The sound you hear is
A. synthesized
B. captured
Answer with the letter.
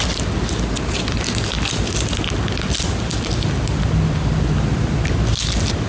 B